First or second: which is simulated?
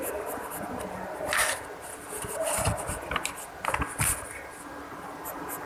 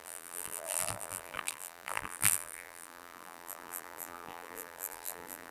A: second